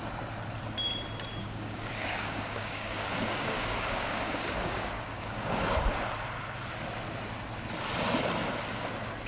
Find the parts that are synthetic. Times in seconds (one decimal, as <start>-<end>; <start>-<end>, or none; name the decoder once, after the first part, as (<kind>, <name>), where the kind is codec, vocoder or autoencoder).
1.4-5.6 (codec, DAC)